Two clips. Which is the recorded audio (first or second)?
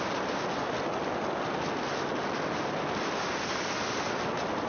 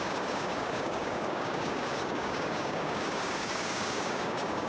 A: first